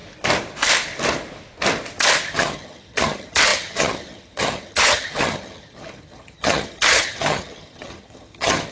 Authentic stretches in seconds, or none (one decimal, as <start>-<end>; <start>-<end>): 0.0-2.3